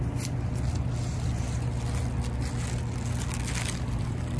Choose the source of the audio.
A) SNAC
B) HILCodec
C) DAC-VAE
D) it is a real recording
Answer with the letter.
D